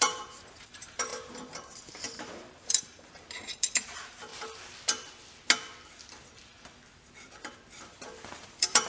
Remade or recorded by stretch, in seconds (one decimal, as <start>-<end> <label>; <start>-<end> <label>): 0.0-4.3 remade; 4.3-8.5 recorded; 8.5-8.9 remade